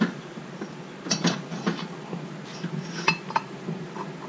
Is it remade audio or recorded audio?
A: recorded